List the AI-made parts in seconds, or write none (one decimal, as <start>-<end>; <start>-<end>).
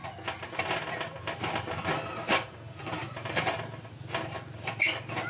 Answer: 3.0-3.6